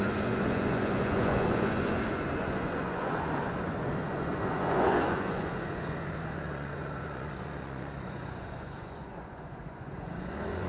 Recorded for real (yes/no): no